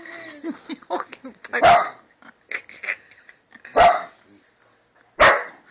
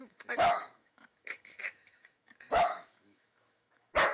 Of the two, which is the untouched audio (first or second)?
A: first